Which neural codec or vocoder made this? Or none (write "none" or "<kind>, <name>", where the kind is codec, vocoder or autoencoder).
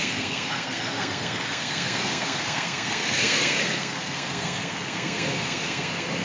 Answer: codec, SNAC